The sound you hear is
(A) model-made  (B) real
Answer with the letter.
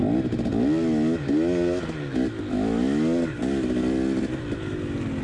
B